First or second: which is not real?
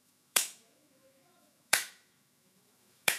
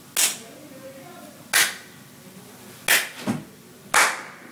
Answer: first